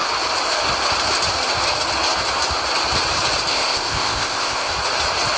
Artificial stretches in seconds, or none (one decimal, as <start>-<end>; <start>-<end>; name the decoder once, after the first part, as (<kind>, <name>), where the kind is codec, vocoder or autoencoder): 3.5-4.7 (codec, ZipCodec)